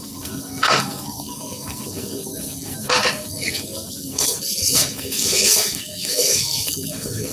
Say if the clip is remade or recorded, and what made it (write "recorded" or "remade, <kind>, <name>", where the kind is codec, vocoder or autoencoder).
remade, codec, SNAC